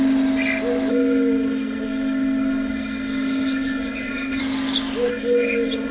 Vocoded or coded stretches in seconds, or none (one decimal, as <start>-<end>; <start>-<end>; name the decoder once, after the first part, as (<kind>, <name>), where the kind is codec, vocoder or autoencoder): 0.9-4.4 (codec, SNAC); 5.1-5.9